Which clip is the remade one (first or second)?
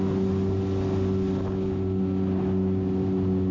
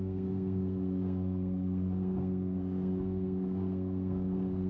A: second